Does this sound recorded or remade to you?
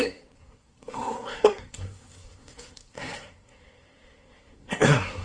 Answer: remade